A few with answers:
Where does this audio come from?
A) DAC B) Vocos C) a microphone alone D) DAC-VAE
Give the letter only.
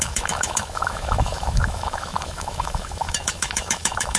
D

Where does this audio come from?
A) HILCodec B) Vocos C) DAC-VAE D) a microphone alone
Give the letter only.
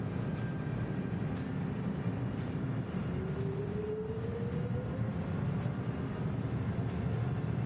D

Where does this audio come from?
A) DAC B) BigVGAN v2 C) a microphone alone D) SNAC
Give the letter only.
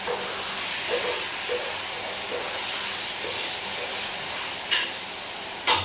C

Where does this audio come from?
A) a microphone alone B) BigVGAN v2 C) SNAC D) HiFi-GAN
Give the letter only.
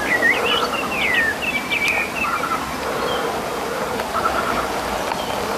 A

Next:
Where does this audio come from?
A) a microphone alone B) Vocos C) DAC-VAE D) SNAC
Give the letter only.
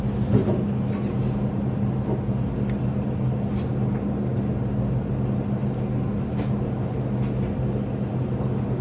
A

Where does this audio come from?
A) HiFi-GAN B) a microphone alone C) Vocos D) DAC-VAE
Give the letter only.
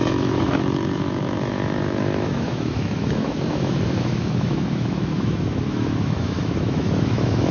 D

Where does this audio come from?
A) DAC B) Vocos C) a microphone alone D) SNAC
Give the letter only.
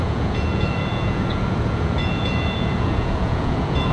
B